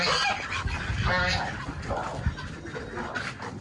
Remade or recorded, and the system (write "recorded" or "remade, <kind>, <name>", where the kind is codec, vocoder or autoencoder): recorded